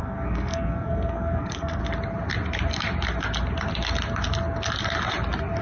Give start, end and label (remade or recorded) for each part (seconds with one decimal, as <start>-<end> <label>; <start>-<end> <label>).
0.0-1.8 remade; 1.8-5.6 recorded